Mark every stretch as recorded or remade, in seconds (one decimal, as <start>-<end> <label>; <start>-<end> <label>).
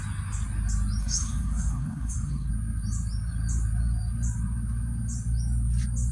0.0-1.0 recorded; 1.0-2.5 remade; 2.5-6.1 recorded